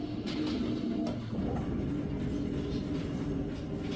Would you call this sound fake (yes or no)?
no